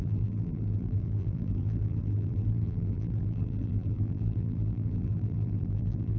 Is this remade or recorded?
remade